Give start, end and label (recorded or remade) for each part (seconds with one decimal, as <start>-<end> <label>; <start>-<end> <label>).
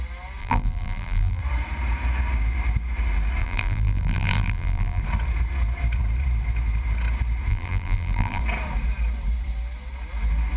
0.0-0.4 recorded; 0.4-1.4 remade; 1.4-3.4 recorded; 3.4-5.0 remade; 5.0-7.5 recorded; 7.5-8.4 remade; 8.4-10.6 recorded